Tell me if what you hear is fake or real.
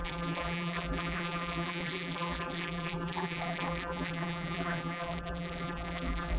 fake